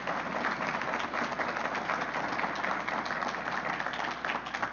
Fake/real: real